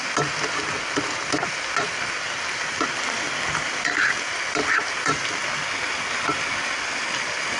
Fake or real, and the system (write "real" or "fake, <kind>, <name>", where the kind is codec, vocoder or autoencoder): real